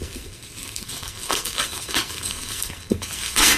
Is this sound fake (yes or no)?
yes